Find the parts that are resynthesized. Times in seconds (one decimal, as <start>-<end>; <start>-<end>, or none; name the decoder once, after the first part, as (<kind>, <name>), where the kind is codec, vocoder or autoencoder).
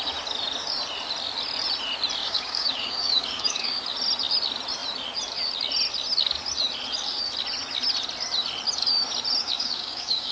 2.2-3.8 (codec, DAC); 9.4-10.3